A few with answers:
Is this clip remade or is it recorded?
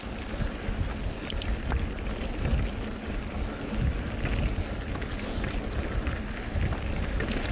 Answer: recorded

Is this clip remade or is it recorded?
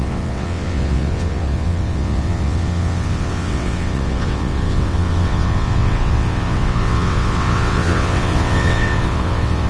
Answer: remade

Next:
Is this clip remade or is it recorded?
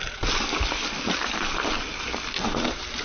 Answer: recorded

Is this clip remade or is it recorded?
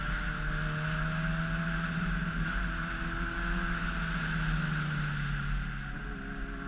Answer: recorded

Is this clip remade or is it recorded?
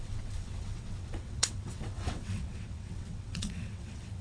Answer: remade